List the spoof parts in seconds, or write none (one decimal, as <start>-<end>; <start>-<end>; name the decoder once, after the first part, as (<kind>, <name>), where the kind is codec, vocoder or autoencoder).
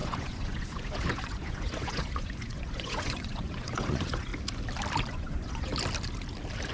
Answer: 0.0-4.3 (vocoder, Vocos); 5.1-5.7